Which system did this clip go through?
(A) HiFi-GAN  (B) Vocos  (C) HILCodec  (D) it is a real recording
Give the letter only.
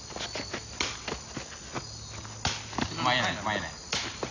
D